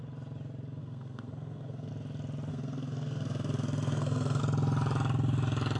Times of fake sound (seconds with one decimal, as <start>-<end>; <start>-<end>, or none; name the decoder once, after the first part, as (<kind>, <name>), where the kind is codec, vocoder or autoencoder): 0.8-1.9 (codec, SNAC); 2.5-4.4